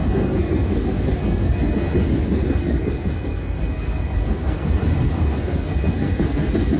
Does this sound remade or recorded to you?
remade